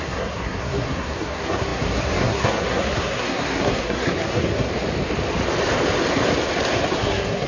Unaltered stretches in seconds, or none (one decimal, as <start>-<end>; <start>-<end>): 4.7-6.9